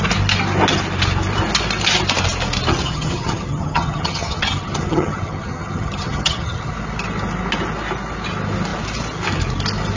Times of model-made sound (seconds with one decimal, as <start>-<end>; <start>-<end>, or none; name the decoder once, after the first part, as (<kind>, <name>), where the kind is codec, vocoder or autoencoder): 2.7-6.7 (vocoder, HiFi-GAN)